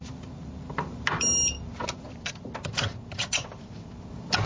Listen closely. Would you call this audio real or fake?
real